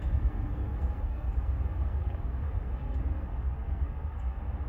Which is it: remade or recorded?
remade